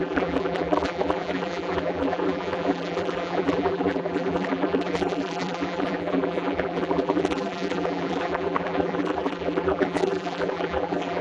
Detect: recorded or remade remade